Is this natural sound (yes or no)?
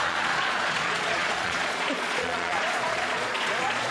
no